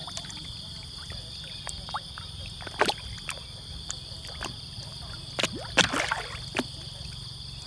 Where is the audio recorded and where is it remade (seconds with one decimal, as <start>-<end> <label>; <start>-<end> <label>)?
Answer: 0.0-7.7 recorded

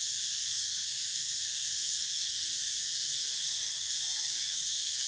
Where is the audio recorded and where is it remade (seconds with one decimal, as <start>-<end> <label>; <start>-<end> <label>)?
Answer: 0.0-5.1 remade

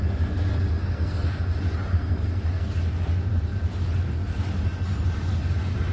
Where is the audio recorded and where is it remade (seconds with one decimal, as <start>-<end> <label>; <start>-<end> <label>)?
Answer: 0.0-0.8 recorded; 0.8-1.4 remade; 1.4-1.9 recorded; 1.9-2.7 remade; 2.7-5.9 recorded

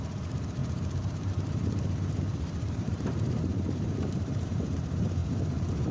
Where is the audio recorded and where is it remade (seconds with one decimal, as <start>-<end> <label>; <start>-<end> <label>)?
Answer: 0.0-3.5 remade; 3.5-4.0 recorded; 4.0-5.2 remade; 5.2-5.9 recorded